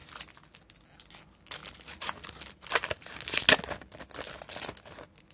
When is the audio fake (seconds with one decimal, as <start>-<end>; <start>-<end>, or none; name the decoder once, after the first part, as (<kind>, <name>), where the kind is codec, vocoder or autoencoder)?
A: none